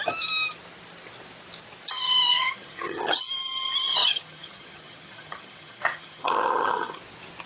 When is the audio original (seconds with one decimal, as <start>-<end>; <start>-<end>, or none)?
0.0-2.3; 3.3-4.0; 7.0-7.5